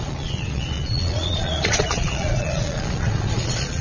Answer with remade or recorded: remade